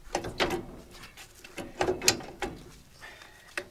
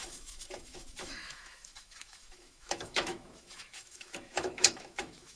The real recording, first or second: first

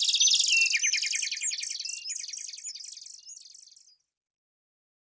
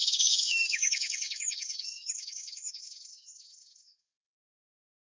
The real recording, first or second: first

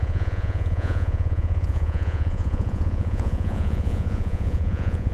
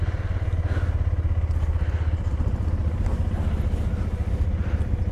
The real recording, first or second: second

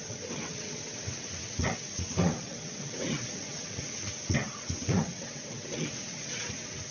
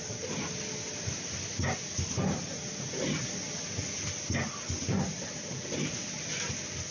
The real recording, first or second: second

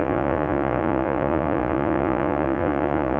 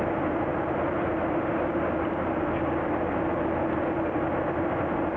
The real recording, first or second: second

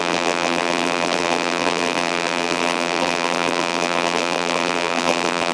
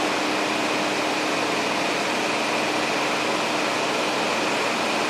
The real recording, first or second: second